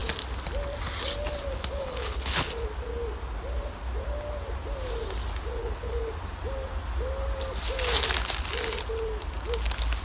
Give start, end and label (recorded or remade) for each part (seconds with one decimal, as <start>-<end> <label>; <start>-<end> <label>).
0.0-1.8 recorded; 1.8-2.5 remade; 2.5-5.6 recorded; 5.6-6.1 remade; 6.1-10.0 recorded